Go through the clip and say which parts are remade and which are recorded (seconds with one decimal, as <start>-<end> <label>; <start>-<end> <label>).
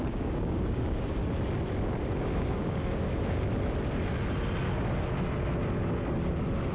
0.0-1.2 remade; 1.2-2.0 recorded; 2.0-3.5 remade; 3.5-6.7 recorded